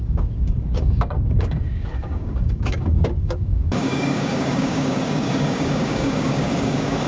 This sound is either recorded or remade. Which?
remade